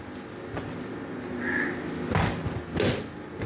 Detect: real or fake real